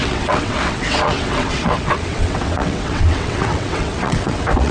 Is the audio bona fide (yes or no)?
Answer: no